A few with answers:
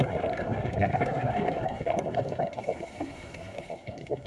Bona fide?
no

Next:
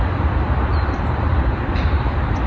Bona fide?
no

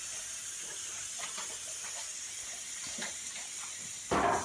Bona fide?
yes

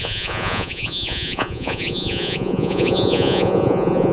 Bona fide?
no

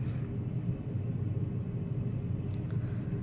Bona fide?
yes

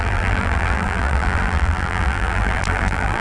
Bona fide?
no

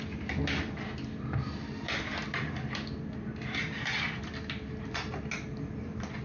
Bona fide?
yes